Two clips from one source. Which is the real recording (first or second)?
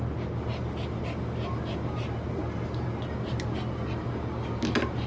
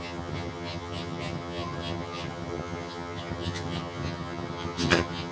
first